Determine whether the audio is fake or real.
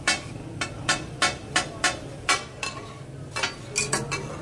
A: real